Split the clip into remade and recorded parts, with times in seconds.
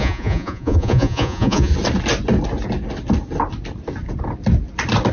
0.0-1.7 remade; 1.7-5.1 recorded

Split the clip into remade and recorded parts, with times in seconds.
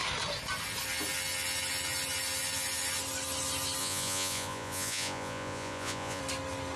0.0-3.8 recorded; 3.8-6.2 remade; 6.2-6.8 recorded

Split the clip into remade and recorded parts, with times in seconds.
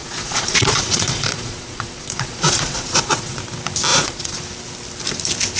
0.0-3.4 remade; 3.4-3.9 recorded; 3.9-4.4 remade; 4.4-5.6 recorded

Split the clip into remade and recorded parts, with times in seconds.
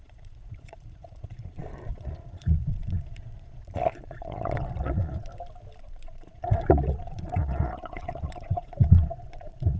0.0-5.3 remade; 5.3-5.8 recorded; 5.8-9.8 remade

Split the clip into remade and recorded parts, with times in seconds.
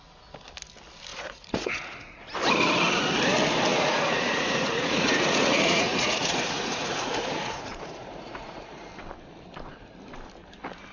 0.0-1.1 recorded; 1.1-2.3 remade; 2.3-3.7 recorded; 3.7-8.9 remade; 8.9-10.9 recorded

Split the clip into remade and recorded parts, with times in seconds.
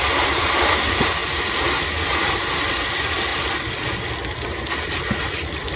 0.0-5.8 recorded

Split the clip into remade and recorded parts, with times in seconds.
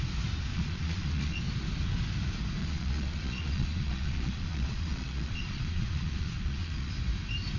0.0-0.5 recorded; 0.5-1.4 remade; 1.4-2.6 recorded; 2.6-6.9 remade; 6.9-7.6 recorded